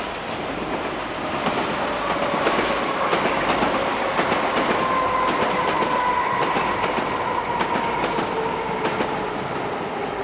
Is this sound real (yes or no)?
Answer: yes